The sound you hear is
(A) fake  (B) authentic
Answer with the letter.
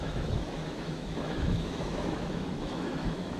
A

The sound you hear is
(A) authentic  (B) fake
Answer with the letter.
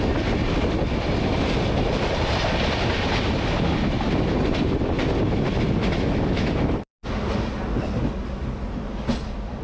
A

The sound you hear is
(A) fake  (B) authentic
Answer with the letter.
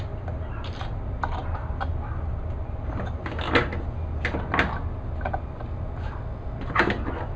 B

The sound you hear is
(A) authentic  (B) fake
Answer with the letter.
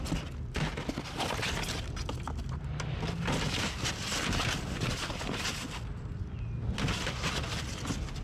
A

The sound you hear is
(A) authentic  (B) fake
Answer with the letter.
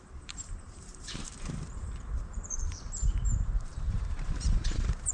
B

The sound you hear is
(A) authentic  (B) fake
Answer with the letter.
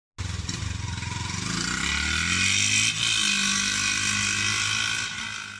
A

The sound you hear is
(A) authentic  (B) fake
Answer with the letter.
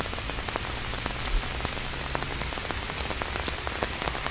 A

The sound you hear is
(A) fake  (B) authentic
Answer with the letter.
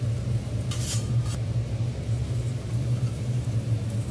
A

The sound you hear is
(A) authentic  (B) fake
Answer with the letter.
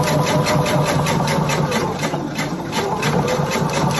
A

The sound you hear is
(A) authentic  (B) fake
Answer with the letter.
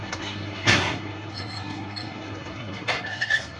B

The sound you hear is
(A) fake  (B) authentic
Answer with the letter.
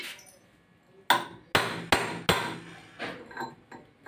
B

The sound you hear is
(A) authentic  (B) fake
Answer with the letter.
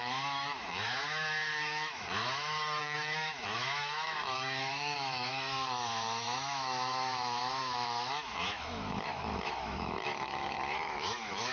B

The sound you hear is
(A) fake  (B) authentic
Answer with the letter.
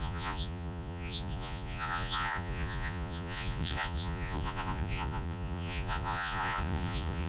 A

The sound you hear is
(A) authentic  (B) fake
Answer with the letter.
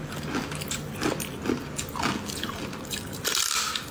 A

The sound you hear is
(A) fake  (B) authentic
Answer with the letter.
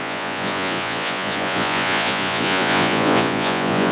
A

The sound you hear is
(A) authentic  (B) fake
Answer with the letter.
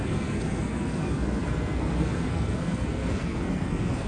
B